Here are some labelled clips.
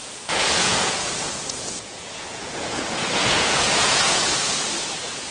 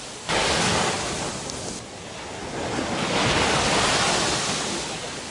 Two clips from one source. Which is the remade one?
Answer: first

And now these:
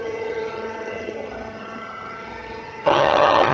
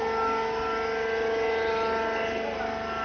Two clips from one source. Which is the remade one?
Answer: first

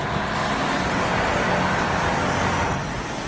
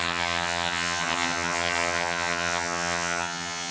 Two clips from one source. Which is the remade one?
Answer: second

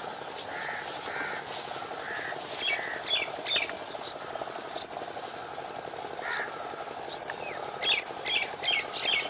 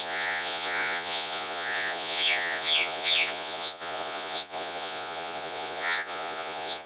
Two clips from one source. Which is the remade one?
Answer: second